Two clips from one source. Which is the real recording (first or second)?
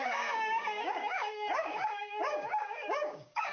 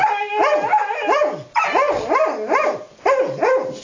second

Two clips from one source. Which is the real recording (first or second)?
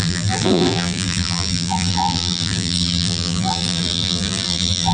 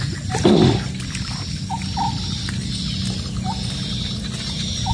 second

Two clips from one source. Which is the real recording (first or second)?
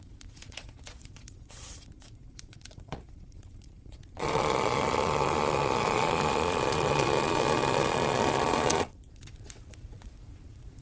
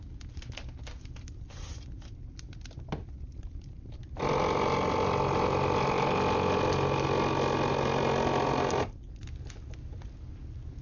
second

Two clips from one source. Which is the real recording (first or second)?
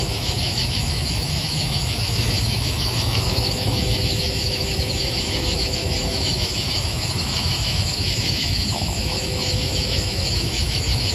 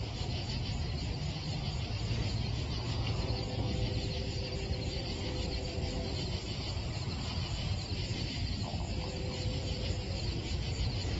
second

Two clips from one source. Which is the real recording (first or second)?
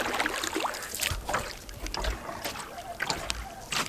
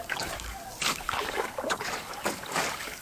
first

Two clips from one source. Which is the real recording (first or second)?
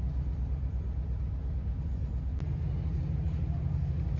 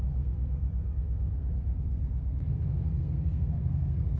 first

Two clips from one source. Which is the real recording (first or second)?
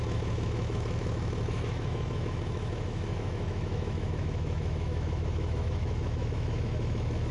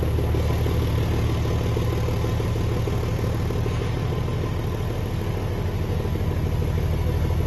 second